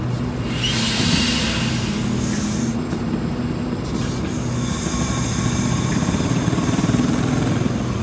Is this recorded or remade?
recorded